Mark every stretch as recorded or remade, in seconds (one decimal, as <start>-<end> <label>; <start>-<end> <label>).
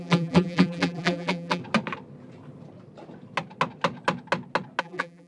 0.0-1.6 remade; 1.6-4.8 recorded; 4.8-5.3 remade